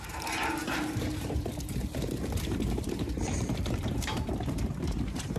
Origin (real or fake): fake